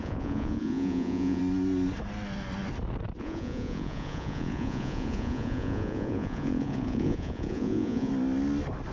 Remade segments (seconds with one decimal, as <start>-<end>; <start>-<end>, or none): 0.0-1.4; 3.2-8.1